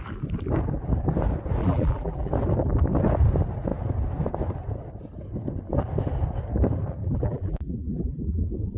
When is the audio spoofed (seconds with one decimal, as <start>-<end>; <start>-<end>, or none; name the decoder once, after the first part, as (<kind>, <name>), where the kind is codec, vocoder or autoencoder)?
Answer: 1.6-2.3 (vocoder, BigVGAN v2); 7.0-8.4